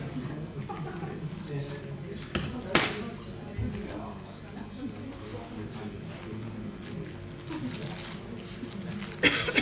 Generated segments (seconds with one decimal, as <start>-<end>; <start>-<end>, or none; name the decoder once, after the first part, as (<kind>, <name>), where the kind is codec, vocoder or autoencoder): none